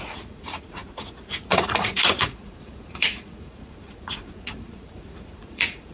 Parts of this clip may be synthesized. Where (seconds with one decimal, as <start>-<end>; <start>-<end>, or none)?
0.0-5.9